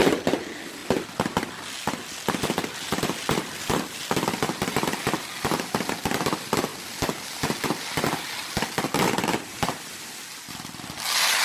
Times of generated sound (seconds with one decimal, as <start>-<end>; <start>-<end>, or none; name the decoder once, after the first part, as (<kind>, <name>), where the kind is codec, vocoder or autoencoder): none